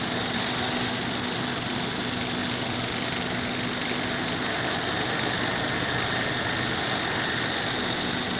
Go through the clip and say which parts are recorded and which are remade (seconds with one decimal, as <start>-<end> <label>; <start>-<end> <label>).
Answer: 0.0-8.4 recorded